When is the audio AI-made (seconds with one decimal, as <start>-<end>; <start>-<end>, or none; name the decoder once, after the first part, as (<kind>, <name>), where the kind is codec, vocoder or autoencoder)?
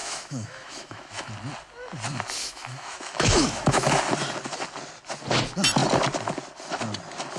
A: 0.0-1.3 (autoencoder, DAC-VAE); 2.4-4.0